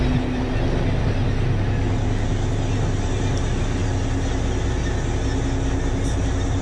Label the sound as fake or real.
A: real